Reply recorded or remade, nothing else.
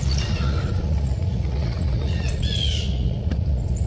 remade